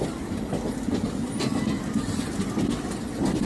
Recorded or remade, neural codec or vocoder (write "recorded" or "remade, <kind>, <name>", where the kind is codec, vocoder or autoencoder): recorded